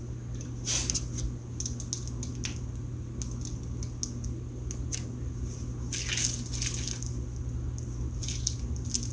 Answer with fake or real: real